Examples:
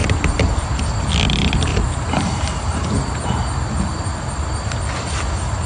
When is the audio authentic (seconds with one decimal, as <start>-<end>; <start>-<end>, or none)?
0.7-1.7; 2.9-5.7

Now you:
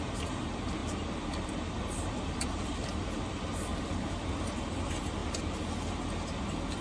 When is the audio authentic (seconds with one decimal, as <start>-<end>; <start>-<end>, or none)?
5.2-6.8

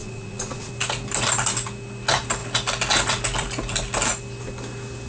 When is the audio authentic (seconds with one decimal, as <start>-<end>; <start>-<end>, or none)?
0.7-5.1